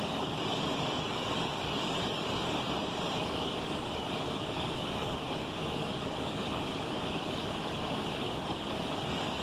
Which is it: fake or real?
fake